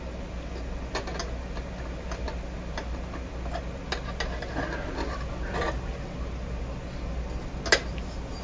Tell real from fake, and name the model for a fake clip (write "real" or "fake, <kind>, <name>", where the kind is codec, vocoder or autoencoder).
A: real